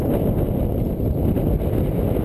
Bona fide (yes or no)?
yes